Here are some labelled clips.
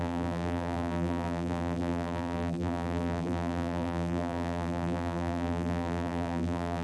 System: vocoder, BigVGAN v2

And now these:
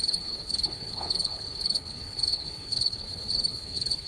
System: codec, HILCodec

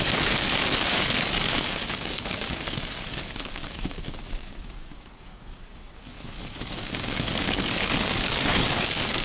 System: codec, DAC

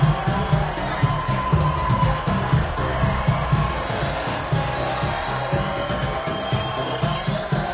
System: none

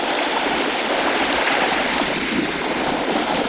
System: none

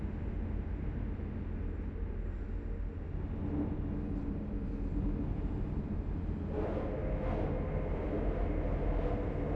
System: none